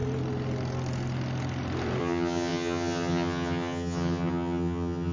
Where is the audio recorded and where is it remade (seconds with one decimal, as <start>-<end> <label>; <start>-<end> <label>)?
0.0-2.0 recorded; 2.0-5.1 remade